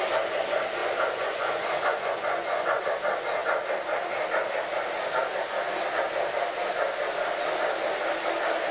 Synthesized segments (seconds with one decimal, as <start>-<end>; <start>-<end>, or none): 0.8-2.8